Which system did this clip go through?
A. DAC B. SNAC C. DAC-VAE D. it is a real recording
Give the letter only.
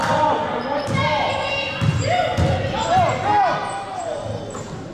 D